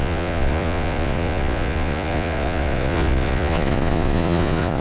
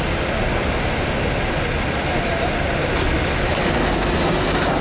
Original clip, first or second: second